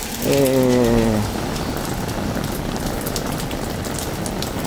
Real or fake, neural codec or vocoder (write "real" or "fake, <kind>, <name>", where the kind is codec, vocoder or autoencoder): real